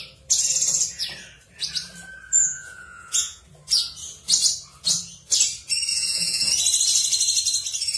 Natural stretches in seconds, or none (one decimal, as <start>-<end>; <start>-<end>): 0.0-2.4; 3.4-5.9; 6.5-8.0